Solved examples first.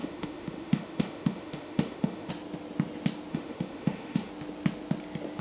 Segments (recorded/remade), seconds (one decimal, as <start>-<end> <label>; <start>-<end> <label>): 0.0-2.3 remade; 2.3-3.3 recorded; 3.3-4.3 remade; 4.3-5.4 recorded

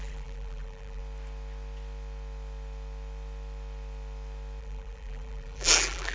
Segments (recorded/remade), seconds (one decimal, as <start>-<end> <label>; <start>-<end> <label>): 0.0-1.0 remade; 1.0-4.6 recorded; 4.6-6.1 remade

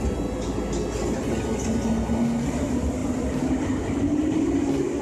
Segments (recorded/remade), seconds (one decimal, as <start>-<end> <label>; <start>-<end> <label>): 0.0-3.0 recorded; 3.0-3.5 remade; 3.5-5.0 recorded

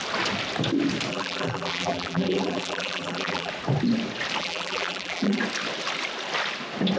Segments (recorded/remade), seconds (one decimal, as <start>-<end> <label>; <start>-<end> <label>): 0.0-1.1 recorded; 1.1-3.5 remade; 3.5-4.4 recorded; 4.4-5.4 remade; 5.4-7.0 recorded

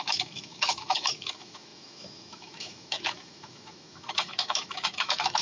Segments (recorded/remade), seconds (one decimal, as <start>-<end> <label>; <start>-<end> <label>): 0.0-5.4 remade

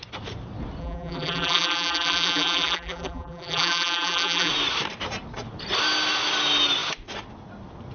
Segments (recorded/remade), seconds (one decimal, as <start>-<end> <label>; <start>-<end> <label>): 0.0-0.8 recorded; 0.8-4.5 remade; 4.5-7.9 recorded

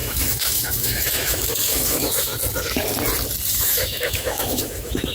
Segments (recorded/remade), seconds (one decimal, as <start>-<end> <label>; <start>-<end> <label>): 0.0-2.3 remade; 2.3-3.5 recorded; 3.5-5.1 remade